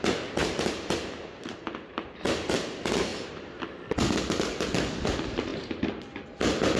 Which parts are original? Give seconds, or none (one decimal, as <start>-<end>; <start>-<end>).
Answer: 0.0-0.4; 2.2-3.1; 3.6-6.8